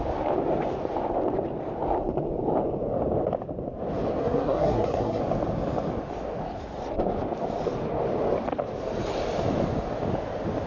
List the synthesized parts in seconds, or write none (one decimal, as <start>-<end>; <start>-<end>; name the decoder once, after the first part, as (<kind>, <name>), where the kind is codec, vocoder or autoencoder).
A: 4.2-5.2 (codec, SNAC)